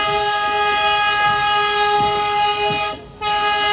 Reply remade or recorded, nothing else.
recorded